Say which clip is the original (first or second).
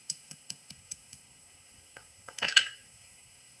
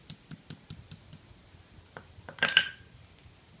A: second